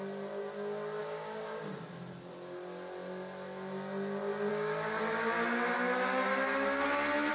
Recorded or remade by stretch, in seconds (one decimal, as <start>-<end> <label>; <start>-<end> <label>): 0.0-1.0 recorded; 1.0-1.6 remade; 1.6-4.5 recorded; 4.5-5.0 remade; 5.0-7.3 recorded